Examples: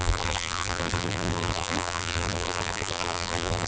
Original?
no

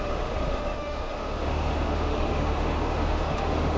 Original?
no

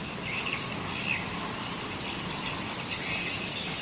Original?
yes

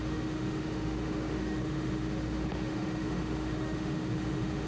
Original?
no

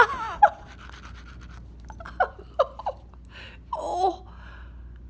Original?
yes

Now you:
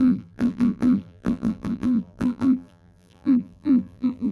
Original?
no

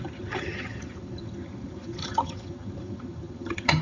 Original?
no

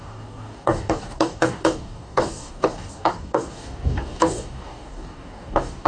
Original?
no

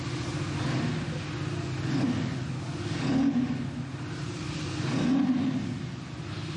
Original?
yes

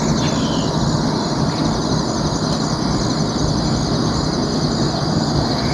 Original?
yes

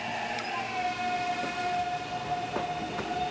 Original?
yes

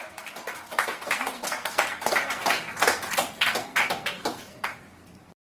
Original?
no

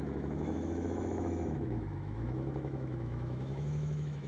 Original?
no